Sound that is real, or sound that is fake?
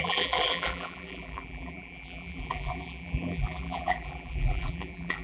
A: fake